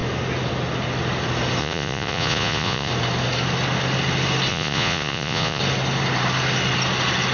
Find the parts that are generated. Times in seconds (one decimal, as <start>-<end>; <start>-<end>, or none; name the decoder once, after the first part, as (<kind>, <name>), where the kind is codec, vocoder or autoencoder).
1.6-2.9 (vocoder, Vocos); 4.5-5.6